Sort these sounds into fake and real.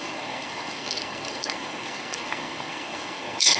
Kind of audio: fake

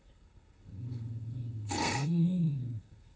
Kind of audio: fake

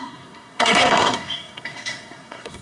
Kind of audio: fake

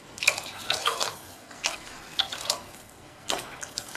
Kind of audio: fake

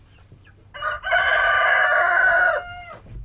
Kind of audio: real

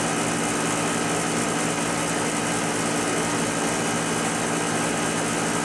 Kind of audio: real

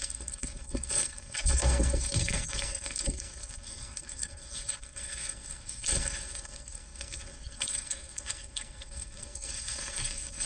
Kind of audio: fake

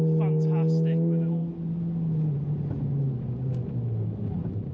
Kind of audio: real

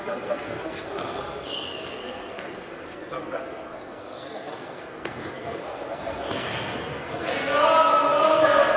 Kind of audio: fake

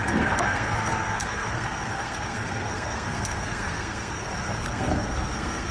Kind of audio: fake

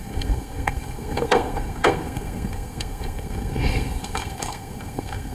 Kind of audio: fake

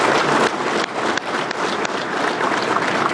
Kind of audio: real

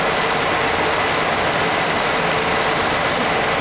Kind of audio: real